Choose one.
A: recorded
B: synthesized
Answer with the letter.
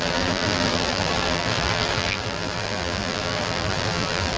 B